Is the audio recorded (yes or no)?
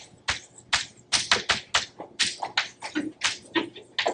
yes